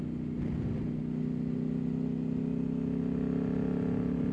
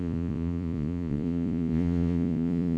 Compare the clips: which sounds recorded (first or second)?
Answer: first